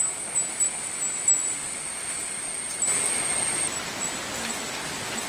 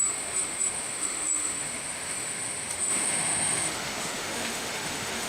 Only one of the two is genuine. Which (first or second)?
first